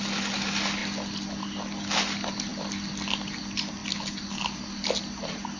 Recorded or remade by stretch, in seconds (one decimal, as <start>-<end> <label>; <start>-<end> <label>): 0.0-5.6 recorded